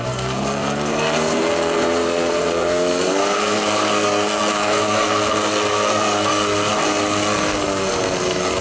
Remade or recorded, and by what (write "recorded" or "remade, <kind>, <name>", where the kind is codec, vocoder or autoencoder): remade, codec, SNAC